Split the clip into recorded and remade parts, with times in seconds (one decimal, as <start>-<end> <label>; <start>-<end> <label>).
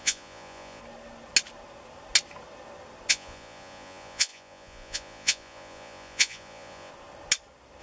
0.0-0.8 remade; 0.8-3.1 recorded; 3.1-6.9 remade; 6.9-7.8 recorded